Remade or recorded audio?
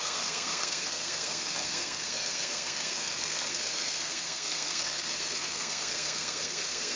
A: remade